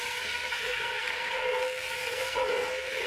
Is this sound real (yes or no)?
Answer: no